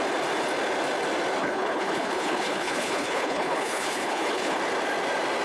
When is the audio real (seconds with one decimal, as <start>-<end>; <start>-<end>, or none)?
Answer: 0.0-1.4; 4.6-5.4